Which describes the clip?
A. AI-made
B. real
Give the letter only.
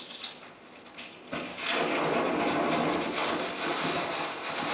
B